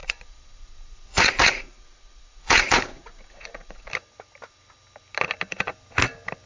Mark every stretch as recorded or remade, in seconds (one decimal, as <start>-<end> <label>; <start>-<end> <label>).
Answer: 0.0-3.9 remade; 3.9-6.5 recorded